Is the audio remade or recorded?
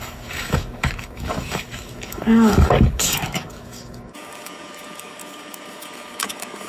remade